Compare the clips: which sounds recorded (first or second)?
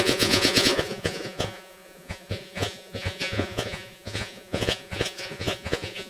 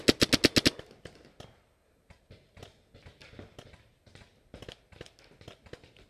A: second